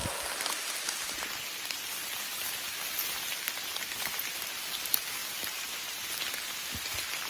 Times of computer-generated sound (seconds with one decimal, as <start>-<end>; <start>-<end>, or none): 0.0-4.4; 5.2-6.1